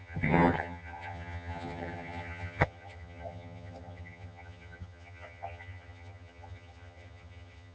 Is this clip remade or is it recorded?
remade